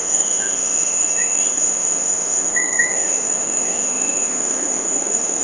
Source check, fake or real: fake